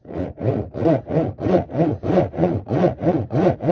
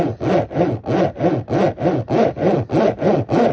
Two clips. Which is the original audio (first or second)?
second